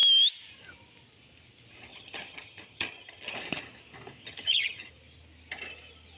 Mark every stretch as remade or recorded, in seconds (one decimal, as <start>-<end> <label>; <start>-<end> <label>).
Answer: 0.0-1.9 recorded; 1.9-3.3 remade; 3.3-4.2 recorded; 4.2-4.9 remade; 4.9-6.2 recorded